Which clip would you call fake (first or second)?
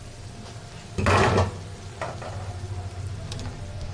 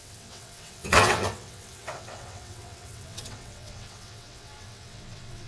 second